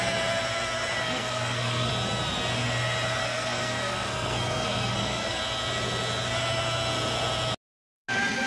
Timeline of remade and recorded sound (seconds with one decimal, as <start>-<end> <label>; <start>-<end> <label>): 0.0-1.0 recorded; 1.0-1.9 remade; 1.9-3.2 recorded; 3.2-5.4 remade; 5.4-8.5 recorded